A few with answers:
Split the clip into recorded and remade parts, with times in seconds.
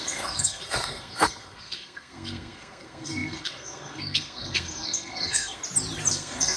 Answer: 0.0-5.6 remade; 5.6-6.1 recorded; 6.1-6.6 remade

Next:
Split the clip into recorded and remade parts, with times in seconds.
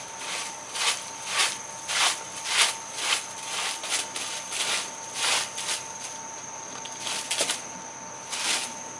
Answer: 0.0-9.0 recorded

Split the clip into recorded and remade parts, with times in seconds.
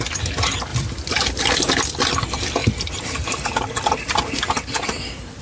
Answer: 0.0-5.4 recorded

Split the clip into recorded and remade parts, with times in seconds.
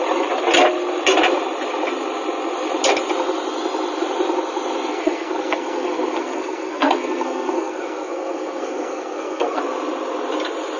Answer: 0.0-4.9 recorded; 4.9-9.6 remade; 9.6-10.8 recorded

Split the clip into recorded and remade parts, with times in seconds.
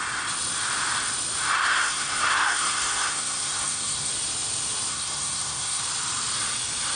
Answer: 0.0-1.6 recorded; 1.6-4.1 remade; 4.1-4.9 recorded; 4.9-5.8 remade; 5.8-7.0 recorded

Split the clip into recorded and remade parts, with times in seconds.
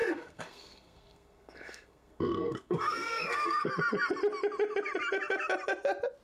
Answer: 0.0-3.7 remade; 3.7-6.2 recorded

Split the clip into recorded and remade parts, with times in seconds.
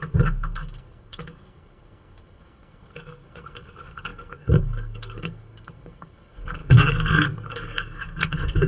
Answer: 0.0-8.7 remade